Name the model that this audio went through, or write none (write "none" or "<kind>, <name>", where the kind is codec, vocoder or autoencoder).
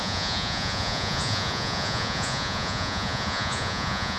vocoder, Vocos